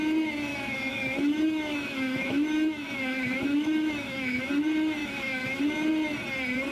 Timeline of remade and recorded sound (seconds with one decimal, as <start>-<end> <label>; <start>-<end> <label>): 0.0-0.5 recorded; 0.5-4.5 remade; 4.5-5.0 recorded; 5.0-5.6 remade; 5.6-6.7 recorded